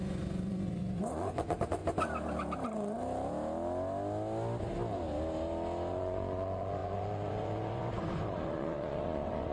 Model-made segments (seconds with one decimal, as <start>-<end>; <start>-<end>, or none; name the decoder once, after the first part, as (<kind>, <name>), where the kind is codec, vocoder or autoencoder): 0.0-1.8 (vocoder, Vocos); 5.9-9.5